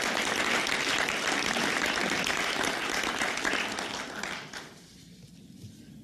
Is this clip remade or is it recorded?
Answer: recorded